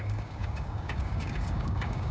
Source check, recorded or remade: remade